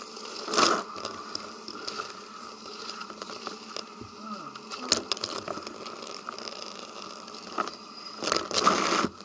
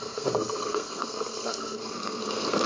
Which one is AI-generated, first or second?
second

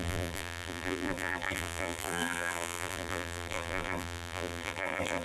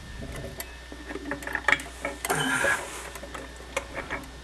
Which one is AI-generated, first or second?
first